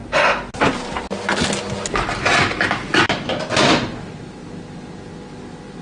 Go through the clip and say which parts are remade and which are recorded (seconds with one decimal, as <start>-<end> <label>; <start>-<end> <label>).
0.0-5.8 recorded